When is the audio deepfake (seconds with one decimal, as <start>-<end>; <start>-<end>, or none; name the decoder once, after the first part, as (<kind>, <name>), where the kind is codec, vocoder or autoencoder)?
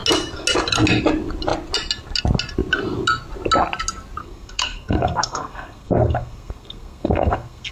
4.2-7.7 (codec, SNAC)